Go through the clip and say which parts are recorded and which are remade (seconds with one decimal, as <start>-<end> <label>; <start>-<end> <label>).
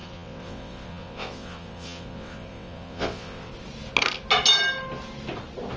0.0-3.5 remade; 3.5-5.8 recorded